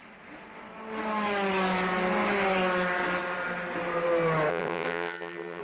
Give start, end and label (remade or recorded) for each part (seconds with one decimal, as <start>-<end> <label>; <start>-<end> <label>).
0.0-4.5 recorded; 4.5-5.6 remade